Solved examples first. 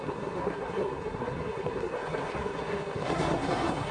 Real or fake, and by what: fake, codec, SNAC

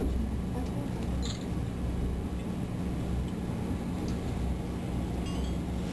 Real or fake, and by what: real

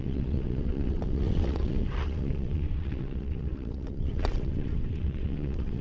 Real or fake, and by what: fake, vocoder, WaveNeXt